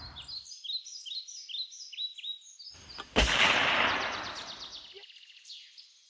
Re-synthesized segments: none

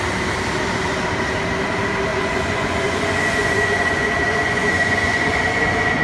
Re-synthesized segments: 2.1-6.0 (vocoder, Vocos)

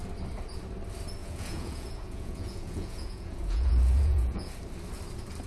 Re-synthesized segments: 1.2-4.5 (vocoder, Vocos)

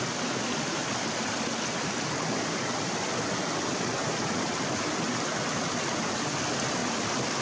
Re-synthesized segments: 0.0-0.8 (vocoder, BigVGAN v2); 1.7-7.4

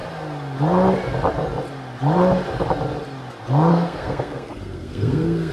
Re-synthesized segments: 3.7-5.5 (codec, SNAC)

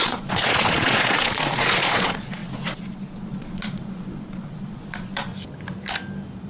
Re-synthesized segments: 0.0-5.3 (vocoder, Vocos)